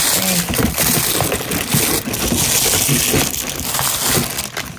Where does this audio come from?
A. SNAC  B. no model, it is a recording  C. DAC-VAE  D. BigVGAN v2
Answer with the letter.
B